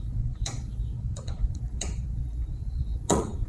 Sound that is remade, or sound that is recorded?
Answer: remade